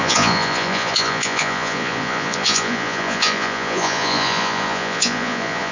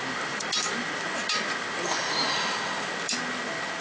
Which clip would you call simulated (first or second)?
first